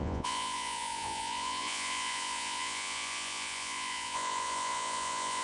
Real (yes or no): no